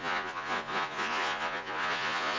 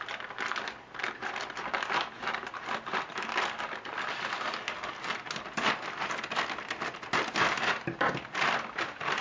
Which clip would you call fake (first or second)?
first